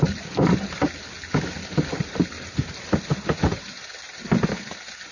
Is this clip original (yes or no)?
yes